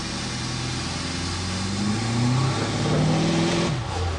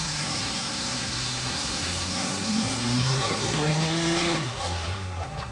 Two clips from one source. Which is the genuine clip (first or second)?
first